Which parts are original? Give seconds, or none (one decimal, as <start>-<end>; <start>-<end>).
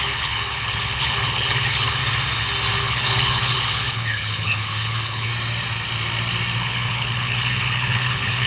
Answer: 2.0-2.8; 5.3-6.6